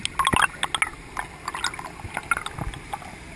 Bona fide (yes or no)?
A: yes